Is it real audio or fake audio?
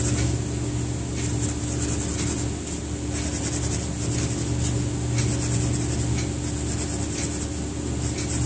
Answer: real